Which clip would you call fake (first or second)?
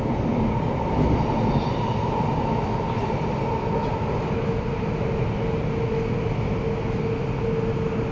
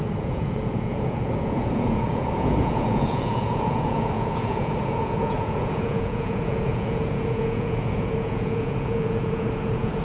second